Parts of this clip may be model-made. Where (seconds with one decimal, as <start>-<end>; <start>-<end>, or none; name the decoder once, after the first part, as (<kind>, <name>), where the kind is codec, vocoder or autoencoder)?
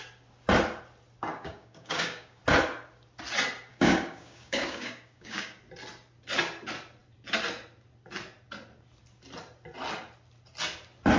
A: 1.3-2.4 (codec, DAC); 3.7-5.6